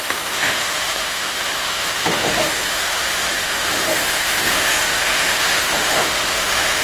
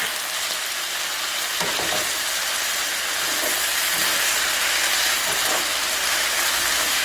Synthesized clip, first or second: first